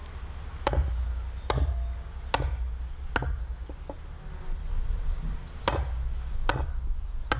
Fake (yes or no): no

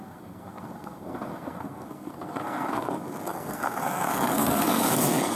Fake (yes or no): yes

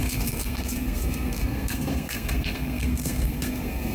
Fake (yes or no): yes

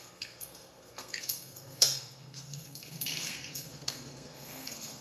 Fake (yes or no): yes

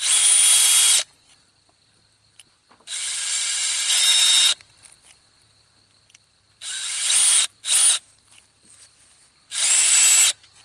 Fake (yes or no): no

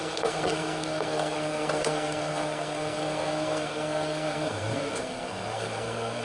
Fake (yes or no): yes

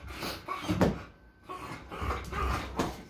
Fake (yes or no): no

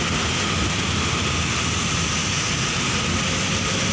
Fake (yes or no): no